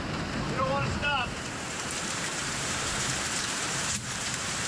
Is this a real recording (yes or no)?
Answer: no